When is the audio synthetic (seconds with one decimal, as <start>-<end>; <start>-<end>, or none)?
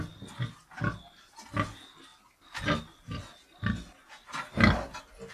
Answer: none